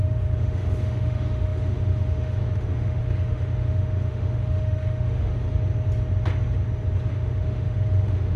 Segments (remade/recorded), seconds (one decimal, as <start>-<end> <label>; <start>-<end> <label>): 0.0-5.3 remade; 5.3-7.1 recorded; 7.1-8.4 remade